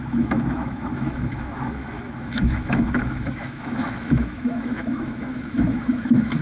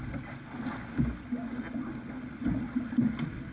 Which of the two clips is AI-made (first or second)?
first